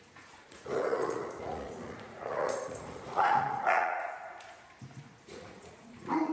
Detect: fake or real fake